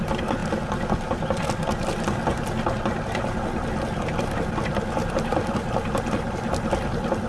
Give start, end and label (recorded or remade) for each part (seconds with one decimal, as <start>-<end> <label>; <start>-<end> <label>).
0.0-0.4 remade; 0.4-4.1 recorded; 4.1-7.3 remade

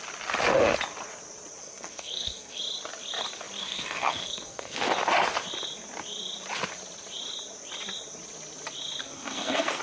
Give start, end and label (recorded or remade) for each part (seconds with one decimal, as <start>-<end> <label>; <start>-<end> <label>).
0.0-1.6 recorded; 1.6-2.6 remade; 2.6-3.6 recorded; 3.6-4.9 remade; 4.9-9.0 recorded; 9.0-9.8 remade

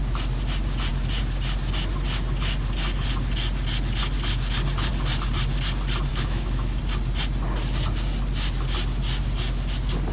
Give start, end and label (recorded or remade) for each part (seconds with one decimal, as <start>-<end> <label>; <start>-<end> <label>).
0.0-6.1 recorded; 6.1-6.8 remade; 6.8-10.1 recorded

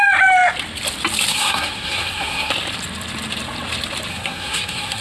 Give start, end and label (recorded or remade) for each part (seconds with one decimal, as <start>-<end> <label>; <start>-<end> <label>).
0.0-1.3 recorded; 1.3-2.5 remade; 2.5-4.1 recorded; 4.1-5.0 remade

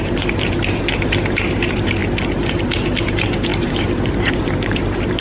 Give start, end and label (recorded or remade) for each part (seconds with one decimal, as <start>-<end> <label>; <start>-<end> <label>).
0.0-2.0 remade; 2.0-3.0 recorded; 3.0-5.2 remade

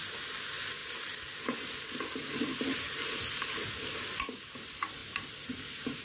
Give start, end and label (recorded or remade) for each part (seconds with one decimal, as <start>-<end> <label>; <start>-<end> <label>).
0.0-6.0 recorded

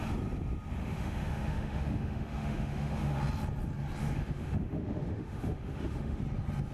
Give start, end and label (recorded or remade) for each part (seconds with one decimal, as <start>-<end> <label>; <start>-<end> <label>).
0.0-0.8 recorded; 0.8-3.2 remade; 3.2-4.0 recorded; 4.0-6.2 remade; 6.2-6.7 recorded

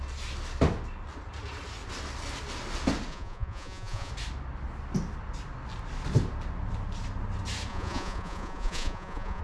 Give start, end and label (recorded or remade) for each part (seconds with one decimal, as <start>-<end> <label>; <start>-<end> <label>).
0.0-3.1 recorded; 3.1-4.1 remade; 4.1-7.7 recorded; 7.7-9.4 remade